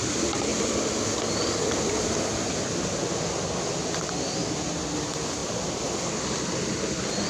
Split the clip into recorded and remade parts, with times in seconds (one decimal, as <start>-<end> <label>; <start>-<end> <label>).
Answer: 0.0-7.3 recorded